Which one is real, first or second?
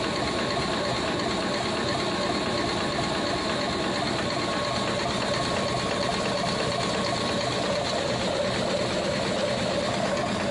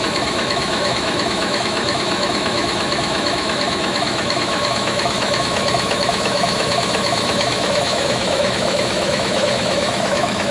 first